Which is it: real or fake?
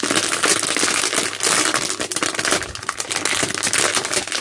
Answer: real